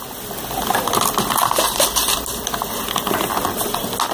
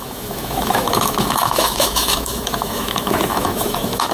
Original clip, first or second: first